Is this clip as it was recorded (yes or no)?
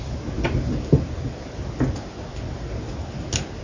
yes